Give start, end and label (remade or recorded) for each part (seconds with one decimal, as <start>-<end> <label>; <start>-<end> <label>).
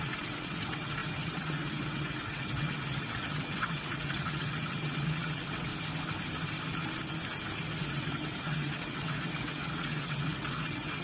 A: 0.0-5.7 remade; 5.7-7.8 recorded; 7.8-11.0 remade